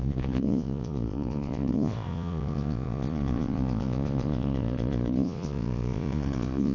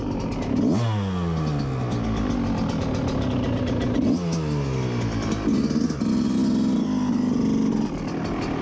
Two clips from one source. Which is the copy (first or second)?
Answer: first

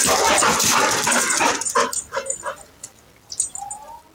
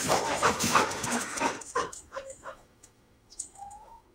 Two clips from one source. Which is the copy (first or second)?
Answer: second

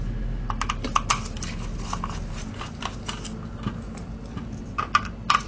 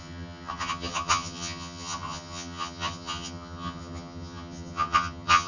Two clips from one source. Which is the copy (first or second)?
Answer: second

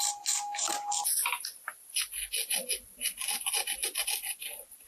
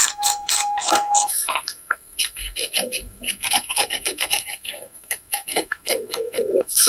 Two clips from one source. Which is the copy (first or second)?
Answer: second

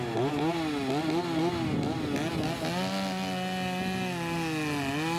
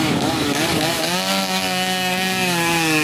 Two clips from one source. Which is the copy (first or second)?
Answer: second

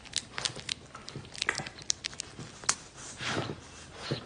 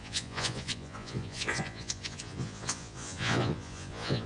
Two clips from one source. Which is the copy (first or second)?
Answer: second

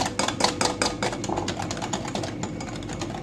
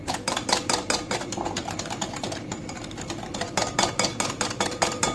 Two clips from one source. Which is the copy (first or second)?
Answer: second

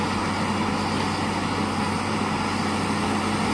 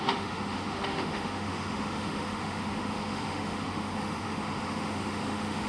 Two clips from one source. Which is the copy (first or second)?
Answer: second